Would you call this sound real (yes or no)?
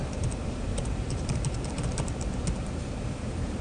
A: no